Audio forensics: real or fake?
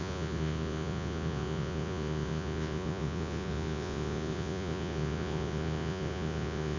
fake